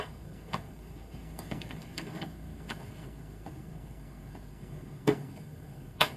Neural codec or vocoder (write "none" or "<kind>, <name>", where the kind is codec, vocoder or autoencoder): codec, SNAC